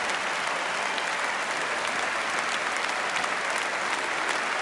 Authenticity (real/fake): real